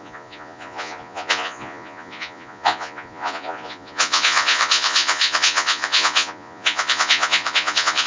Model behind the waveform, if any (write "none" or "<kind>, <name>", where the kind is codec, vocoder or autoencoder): vocoder, Vocos